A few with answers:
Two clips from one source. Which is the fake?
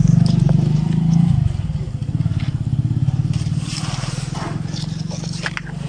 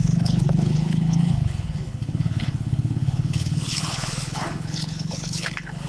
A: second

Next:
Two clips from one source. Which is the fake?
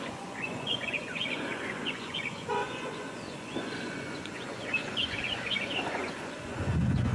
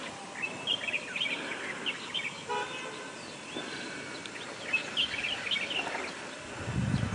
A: first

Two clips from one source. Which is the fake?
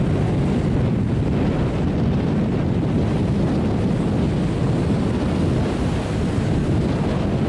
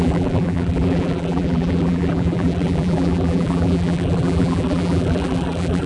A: second